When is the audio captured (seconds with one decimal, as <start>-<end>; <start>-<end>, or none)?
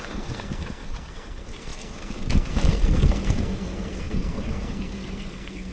none